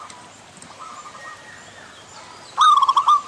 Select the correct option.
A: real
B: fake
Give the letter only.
A